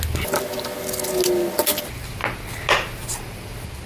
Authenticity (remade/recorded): recorded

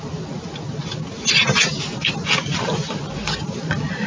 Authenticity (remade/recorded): recorded